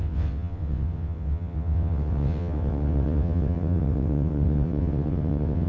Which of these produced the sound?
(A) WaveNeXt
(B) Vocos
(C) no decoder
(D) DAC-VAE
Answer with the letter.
A